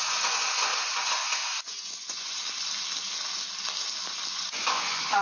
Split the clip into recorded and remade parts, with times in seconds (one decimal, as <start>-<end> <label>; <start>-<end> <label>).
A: 0.0-2.4 remade; 2.4-4.3 recorded; 4.3-5.2 remade